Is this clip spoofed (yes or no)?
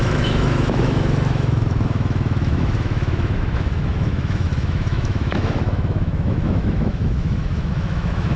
yes